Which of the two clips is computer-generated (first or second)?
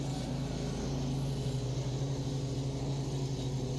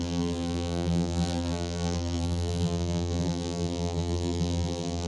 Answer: second